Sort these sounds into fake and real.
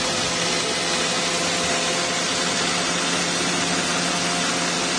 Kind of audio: real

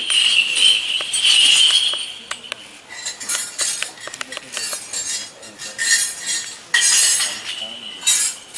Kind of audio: real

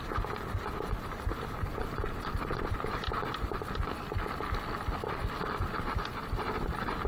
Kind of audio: real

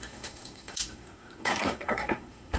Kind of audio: fake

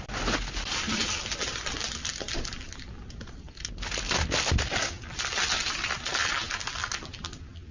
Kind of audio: real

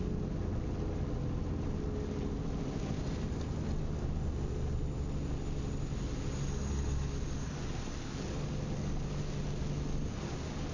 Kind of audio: real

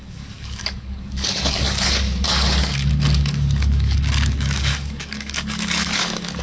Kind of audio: fake